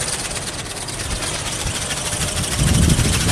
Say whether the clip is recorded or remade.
remade